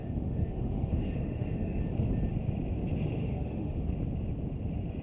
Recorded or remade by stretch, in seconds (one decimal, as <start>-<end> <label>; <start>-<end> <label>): 0.0-1.8 remade; 1.8-3.2 recorded; 3.2-3.9 remade; 3.9-5.0 recorded